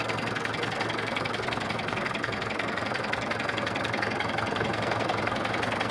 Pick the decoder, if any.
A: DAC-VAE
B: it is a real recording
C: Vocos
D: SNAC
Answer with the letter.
D